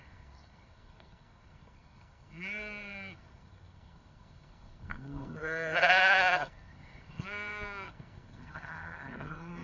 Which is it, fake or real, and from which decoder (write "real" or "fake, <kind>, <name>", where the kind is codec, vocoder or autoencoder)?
fake, codec, SNAC